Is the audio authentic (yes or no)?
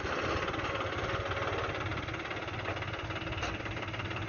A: yes